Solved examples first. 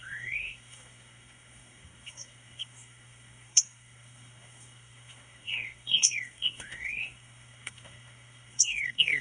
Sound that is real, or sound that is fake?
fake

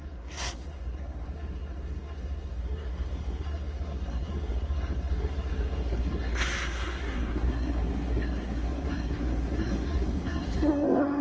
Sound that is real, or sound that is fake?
fake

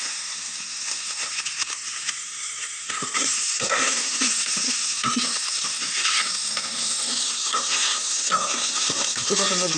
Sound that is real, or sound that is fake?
fake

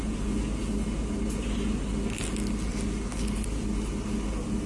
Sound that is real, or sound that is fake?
real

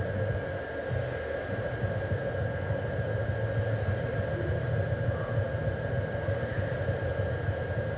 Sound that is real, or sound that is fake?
real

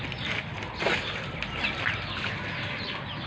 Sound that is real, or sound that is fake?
real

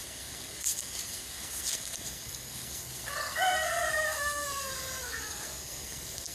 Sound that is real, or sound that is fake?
fake